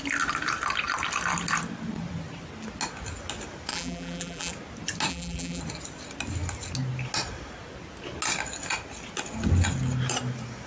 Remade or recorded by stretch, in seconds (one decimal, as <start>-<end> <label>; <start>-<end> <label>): 0.0-3.7 recorded; 3.7-4.5 remade; 4.5-5.1 recorded; 5.1-5.6 remade; 5.6-10.7 recorded